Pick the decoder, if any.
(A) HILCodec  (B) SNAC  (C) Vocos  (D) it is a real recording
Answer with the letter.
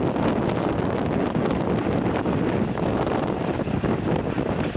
D